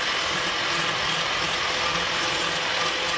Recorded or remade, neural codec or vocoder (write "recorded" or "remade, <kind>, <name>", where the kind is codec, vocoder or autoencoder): recorded